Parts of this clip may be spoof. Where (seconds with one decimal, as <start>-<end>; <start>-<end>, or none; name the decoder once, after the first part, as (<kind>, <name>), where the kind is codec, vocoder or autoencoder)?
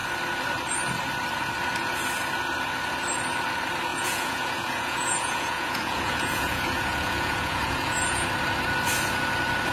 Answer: 3.9-8.3 (vocoder, Vocos)